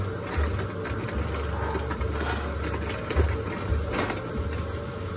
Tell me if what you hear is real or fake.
real